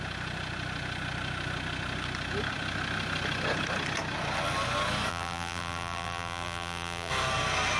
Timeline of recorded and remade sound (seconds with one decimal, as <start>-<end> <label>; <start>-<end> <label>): 0.0-5.1 recorded; 5.1-7.1 remade; 7.1-7.8 recorded